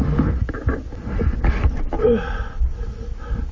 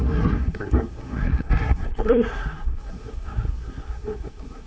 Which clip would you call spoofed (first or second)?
second